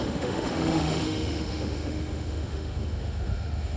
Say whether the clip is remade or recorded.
remade